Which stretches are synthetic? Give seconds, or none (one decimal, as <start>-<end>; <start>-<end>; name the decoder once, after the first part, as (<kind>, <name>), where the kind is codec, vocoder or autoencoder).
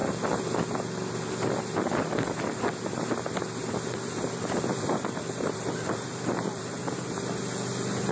3.7-6.8 (vocoder, BigVGAN v2)